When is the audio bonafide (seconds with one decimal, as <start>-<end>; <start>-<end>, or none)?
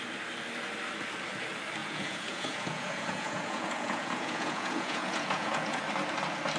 0.0-1.8; 5.8-6.6